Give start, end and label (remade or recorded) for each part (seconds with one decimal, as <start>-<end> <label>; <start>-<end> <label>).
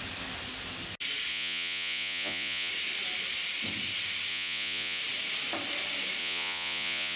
0.0-1.3 recorded; 1.3-2.7 remade; 2.7-4.3 recorded; 4.3-5.0 remade; 5.0-6.2 recorded; 6.2-7.2 remade